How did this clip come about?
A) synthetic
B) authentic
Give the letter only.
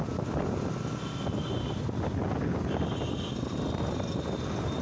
B